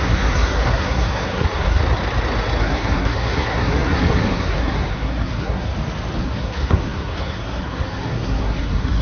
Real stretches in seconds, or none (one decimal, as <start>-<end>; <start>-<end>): 1.8-2.6; 5.7-6.2